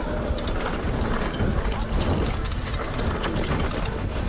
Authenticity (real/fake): real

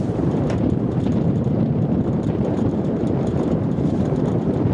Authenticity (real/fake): fake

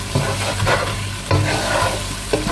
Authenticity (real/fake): real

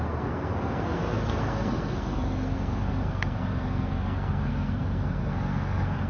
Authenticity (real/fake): fake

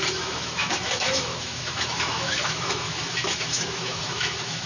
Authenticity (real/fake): fake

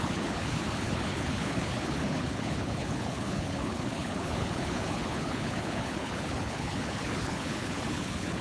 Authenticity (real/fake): fake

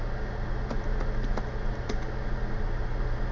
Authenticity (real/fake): real